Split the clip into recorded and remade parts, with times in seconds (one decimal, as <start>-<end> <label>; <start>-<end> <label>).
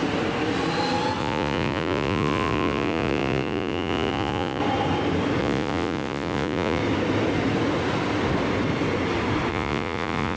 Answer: 0.0-1.2 recorded; 1.2-4.6 remade; 4.6-5.4 recorded; 5.4-6.8 remade; 6.8-9.5 recorded; 9.5-10.4 remade